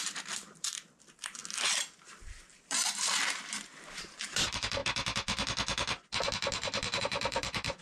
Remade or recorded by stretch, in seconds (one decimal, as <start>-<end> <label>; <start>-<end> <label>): 0.0-1.4 remade; 1.4-2.5 recorded; 2.5-4.8 remade; 4.8-7.0 recorded; 7.0-7.8 remade